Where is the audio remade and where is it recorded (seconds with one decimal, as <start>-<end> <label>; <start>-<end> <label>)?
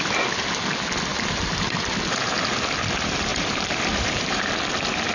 0.0-1.1 recorded; 1.1-1.8 remade; 1.8-3.3 recorded; 3.3-4.5 remade; 4.5-5.1 recorded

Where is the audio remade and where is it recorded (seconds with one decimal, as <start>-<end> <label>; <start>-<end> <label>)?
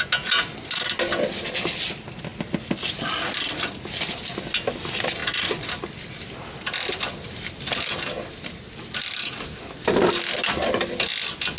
0.0-11.6 recorded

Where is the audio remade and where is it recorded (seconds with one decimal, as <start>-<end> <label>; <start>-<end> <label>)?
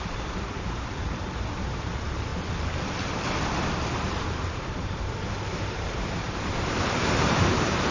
0.0-2.3 remade; 2.3-4.2 recorded; 4.2-7.9 remade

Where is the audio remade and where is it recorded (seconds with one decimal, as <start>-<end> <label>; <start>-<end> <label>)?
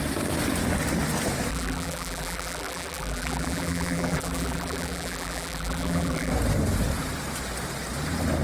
0.0-1.5 recorded; 1.5-6.3 remade; 6.3-8.4 recorded